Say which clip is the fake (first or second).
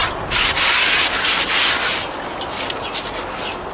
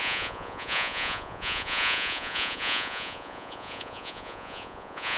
second